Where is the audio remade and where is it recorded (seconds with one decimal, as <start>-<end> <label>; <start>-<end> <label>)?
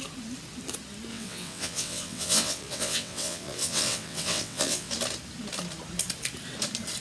0.0-1.1 recorded; 1.1-4.9 remade; 4.9-7.0 recorded